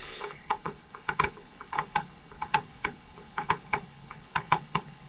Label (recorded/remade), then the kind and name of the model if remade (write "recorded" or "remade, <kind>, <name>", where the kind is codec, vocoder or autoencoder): remade, codec, HILCodec